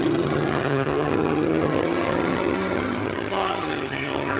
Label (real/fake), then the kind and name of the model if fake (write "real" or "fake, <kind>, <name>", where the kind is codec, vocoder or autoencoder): fake, vocoder, HiFi-GAN